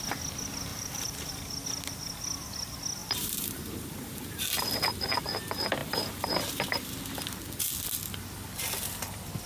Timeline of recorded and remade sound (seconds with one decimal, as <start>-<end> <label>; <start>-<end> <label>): 0.0-0.7 recorded; 0.7-1.3 remade; 1.3-3.0 recorded; 3.0-4.7 remade; 4.7-5.8 recorded; 5.8-6.4 remade; 6.4-9.5 recorded